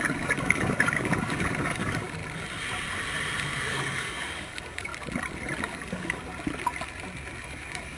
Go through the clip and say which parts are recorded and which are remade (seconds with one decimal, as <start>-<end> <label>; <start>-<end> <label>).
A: 0.0-2.2 remade; 2.2-3.6 recorded; 3.6-4.9 remade; 4.9-5.6 recorded; 5.6-6.3 remade; 6.3-7.4 recorded; 7.4-8.0 remade